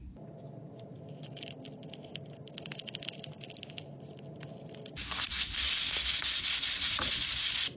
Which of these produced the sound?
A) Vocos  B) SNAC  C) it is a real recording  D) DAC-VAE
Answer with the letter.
C